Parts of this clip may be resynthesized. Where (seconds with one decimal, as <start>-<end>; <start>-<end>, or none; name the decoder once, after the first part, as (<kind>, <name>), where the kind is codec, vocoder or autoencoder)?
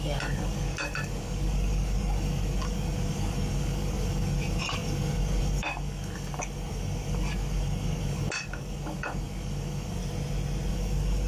0.0-10.0 (codec, DAC); 10.7-11.3